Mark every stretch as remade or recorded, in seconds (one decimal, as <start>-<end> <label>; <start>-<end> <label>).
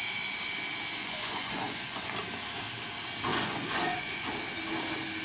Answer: 0.0-1.0 recorded; 1.0-2.1 remade; 2.1-3.3 recorded; 3.3-4.3 remade; 4.3-5.2 recorded